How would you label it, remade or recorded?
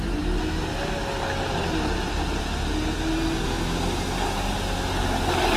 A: recorded